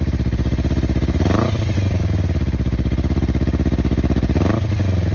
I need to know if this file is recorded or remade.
recorded